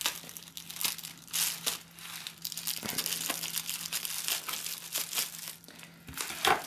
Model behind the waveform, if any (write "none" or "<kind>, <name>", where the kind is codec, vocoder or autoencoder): none